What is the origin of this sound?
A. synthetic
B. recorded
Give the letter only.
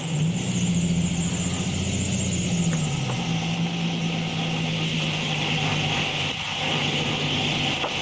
B